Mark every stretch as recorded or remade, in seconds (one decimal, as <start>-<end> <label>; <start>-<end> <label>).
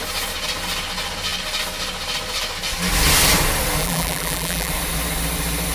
0.0-3.8 recorded; 3.8-4.7 remade; 4.7-5.7 recorded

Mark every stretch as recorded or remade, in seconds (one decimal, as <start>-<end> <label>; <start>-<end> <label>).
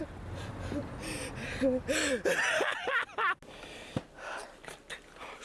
0.0-5.4 recorded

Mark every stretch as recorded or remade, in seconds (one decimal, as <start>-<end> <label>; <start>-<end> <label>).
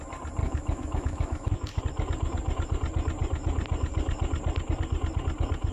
0.0-0.4 recorded; 0.4-1.8 remade; 1.8-5.7 recorded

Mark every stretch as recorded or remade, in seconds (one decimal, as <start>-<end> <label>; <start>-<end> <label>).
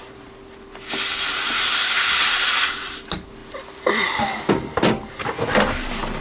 0.0-6.2 recorded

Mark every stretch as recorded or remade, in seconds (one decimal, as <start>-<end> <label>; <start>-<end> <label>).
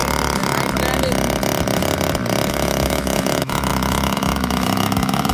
0.0-2.5 recorded; 2.5-5.3 remade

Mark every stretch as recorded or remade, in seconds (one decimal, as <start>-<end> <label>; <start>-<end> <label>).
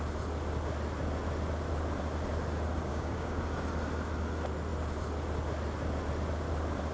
0.0-2.9 recorded; 2.9-3.4 remade; 3.4-6.9 recorded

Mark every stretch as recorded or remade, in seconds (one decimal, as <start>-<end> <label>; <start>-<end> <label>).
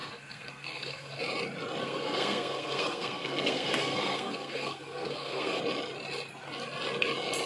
0.0-1.2 remade; 1.2-1.8 recorded; 1.8-5.6 remade; 5.6-7.5 recorded